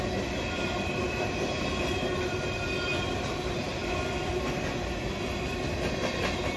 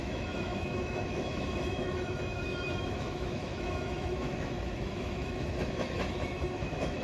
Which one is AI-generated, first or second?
second